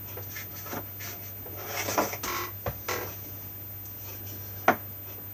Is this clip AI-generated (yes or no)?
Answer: no